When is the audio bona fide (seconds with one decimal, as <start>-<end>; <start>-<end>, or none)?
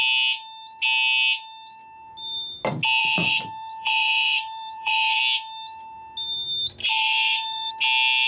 0.0-3.0; 5.2-6.8; 7.7-8.3